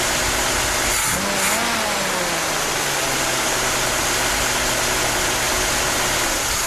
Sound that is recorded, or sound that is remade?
recorded